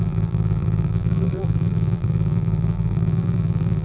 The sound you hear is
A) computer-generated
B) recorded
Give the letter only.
A